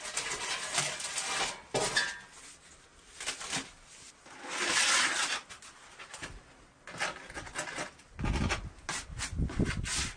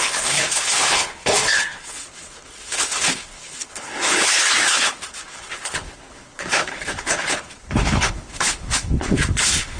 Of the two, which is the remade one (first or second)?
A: second